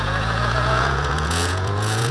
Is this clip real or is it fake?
fake